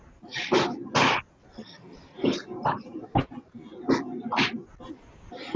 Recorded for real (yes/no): yes